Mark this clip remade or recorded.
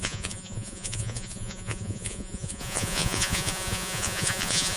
remade